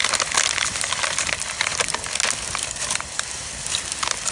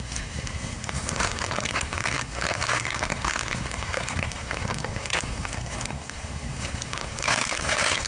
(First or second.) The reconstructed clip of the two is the second